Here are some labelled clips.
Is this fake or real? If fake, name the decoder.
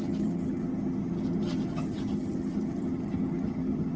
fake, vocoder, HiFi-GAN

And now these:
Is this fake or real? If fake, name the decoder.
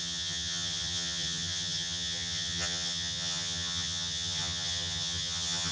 fake, vocoder, HiFi-GAN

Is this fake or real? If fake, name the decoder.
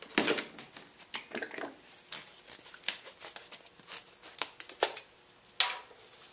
real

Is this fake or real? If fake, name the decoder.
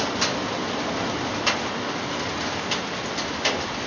real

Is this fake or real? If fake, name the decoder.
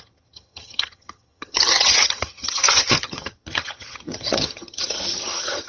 fake, vocoder, HiFi-GAN